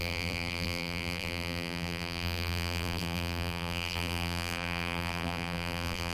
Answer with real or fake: fake